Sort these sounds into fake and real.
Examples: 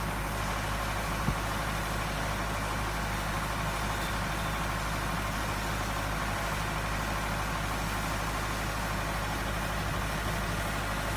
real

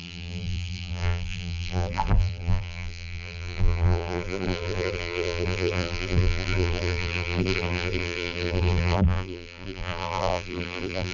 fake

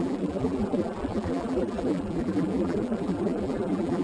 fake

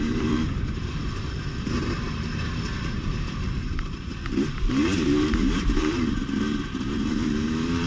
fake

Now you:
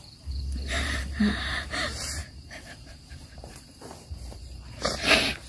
fake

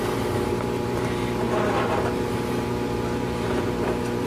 fake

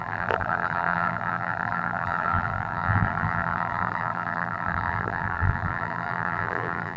fake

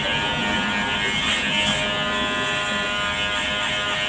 real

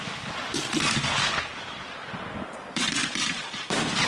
fake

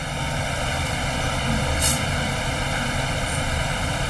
fake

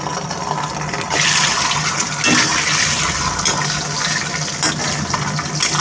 real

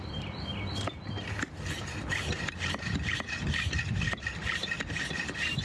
real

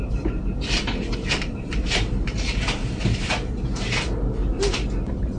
fake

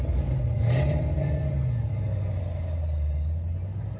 real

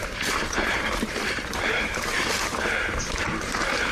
fake